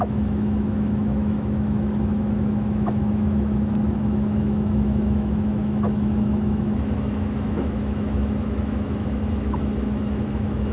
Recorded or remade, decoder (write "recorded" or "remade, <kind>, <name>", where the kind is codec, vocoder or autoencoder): remade, autoencoder, DAC-VAE